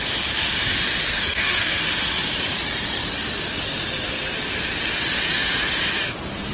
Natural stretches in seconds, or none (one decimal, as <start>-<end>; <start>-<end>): 0.0-1.1; 1.8-6.5